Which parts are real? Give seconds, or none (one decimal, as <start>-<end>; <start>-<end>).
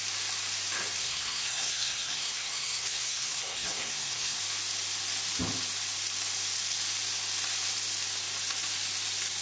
0.0-1.0; 4.4-9.4